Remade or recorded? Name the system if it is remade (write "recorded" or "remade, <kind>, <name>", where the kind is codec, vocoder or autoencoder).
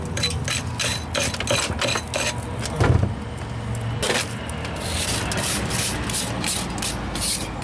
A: recorded